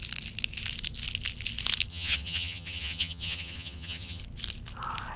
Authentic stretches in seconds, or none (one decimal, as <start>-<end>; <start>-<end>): 0.0-1.9; 4.2-5.2